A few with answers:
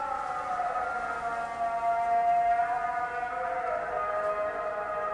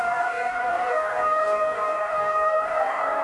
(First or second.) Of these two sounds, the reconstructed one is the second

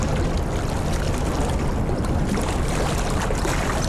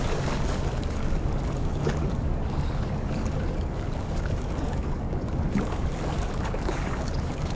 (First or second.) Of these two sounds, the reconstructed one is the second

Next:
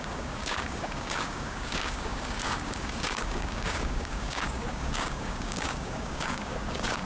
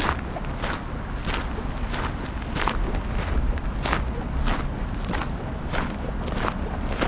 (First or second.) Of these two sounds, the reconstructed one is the first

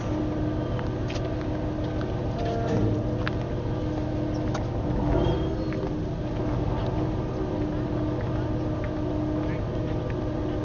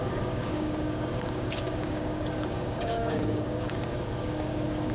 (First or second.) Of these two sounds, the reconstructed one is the second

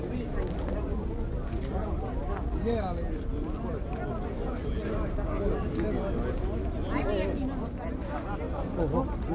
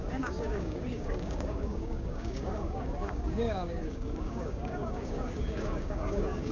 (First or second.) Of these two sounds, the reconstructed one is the second